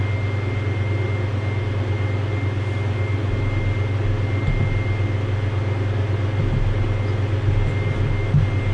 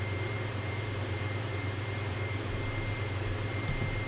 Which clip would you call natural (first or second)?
first